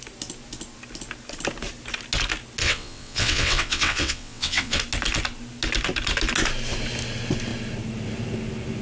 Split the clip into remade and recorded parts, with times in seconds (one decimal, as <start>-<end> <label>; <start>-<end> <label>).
0.0-2.6 recorded; 2.6-4.8 remade; 4.8-8.8 recorded